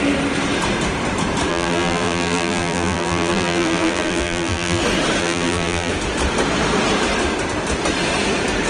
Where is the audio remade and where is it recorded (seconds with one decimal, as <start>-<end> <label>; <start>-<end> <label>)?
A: 0.0-1.5 recorded; 1.5-4.8 remade; 4.8-5.2 recorded; 5.2-5.9 remade; 5.9-8.7 recorded